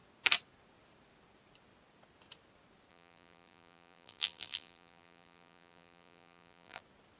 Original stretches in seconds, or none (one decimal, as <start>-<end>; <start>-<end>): 0.0-2.9; 6.8-7.2